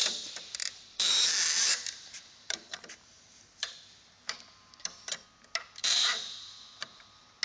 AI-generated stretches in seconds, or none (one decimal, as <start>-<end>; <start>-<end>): 0.6-5.0; 5.8-7.4